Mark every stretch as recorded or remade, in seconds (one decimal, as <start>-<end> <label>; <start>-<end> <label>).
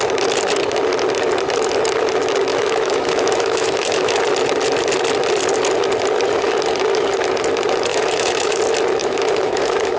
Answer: 0.0-2.5 recorded; 2.5-4.2 remade; 4.2-7.9 recorded; 7.9-8.6 remade; 8.6-9.0 recorded; 9.0-10.0 remade